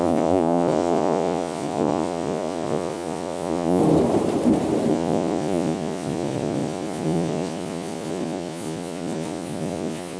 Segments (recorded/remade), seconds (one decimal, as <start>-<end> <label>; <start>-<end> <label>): 0.0-3.8 remade; 3.8-4.9 recorded; 4.9-10.2 remade